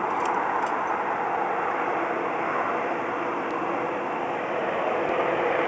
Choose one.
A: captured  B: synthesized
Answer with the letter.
A